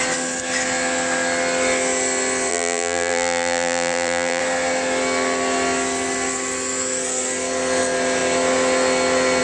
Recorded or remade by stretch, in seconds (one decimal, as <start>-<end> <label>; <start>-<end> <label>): 0.0-2.5 recorded; 2.5-4.4 remade; 4.4-9.4 recorded